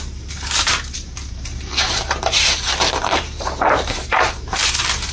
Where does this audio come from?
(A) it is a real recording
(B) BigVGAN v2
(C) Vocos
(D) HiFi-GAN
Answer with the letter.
B